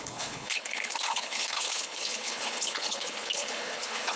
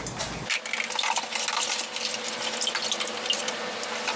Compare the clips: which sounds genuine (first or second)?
second